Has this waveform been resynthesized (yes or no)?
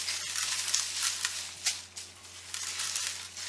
no